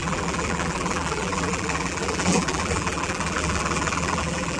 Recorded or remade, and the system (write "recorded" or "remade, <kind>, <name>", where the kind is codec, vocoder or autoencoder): remade, vocoder, BigVGAN v2